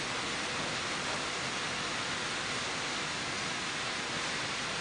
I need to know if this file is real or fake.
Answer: real